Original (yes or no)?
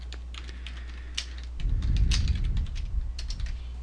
yes